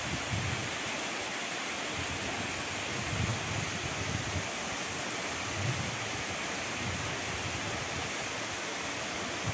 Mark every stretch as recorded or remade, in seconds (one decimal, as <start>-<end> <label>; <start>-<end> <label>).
0.0-9.5 recorded

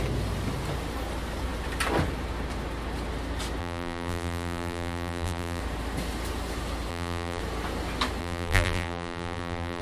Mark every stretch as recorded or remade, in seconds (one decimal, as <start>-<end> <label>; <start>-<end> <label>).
0.0-3.6 recorded; 3.6-5.6 remade; 5.6-6.9 recorded; 6.9-7.4 remade; 7.4-8.2 recorded; 8.2-9.8 remade